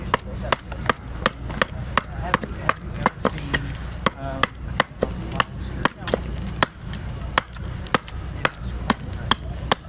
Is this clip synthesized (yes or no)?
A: no